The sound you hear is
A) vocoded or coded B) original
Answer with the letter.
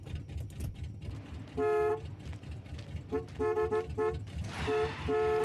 B